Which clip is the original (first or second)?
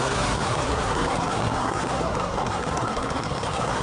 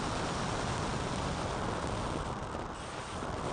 second